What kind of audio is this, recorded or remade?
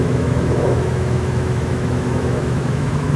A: remade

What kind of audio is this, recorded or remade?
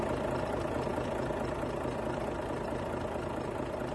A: recorded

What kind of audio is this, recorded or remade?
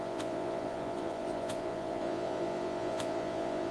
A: remade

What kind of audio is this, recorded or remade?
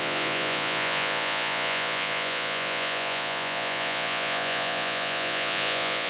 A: remade